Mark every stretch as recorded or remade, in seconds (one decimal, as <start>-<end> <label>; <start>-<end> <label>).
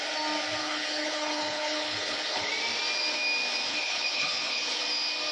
0.0-0.6 recorded; 0.6-2.5 remade; 2.5-3.7 recorded; 3.7-4.8 remade; 4.8-5.3 recorded